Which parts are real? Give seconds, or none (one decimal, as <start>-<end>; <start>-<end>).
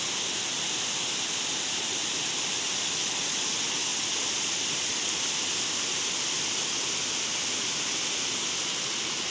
0.0-9.3